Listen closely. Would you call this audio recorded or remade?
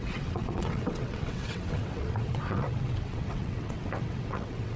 remade